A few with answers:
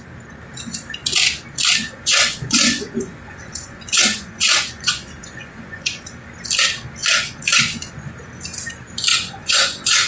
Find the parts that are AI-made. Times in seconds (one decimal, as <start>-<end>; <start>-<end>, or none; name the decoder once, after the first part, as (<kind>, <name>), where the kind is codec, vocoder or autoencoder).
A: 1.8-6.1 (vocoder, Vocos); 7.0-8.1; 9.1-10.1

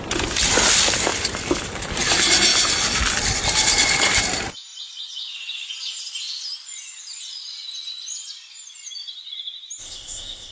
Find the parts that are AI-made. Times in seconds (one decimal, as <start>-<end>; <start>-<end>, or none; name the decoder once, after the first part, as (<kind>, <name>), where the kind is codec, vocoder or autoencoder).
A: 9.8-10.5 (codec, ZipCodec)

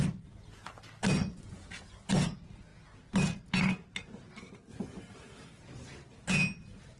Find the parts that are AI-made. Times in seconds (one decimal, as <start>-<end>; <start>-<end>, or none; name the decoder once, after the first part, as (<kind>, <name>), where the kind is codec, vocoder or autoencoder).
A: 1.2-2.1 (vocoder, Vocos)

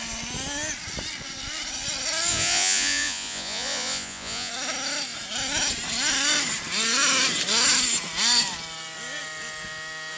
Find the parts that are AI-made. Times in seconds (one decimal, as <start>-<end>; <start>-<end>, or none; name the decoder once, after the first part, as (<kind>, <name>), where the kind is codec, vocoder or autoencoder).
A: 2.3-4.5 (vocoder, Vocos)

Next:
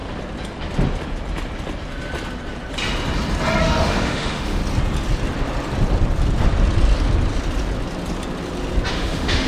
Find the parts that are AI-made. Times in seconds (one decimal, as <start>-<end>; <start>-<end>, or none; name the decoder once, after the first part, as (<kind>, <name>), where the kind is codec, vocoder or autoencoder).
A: 3.6-4.6 (autoencoder, DAC-VAE); 8.9-9.5